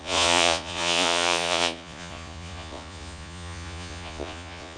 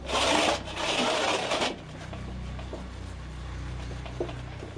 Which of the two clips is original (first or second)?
second